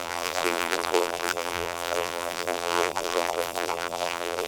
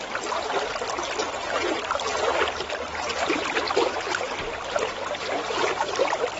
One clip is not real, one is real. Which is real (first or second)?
second